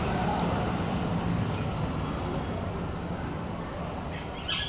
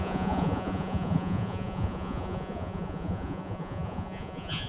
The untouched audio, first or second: first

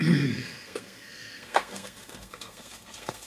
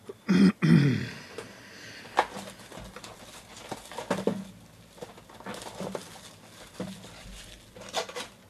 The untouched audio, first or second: second